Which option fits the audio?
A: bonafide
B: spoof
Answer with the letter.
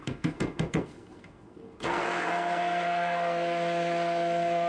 B